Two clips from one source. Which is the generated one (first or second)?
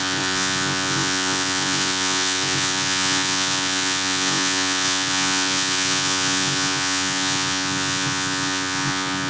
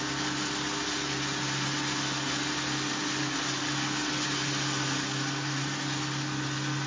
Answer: first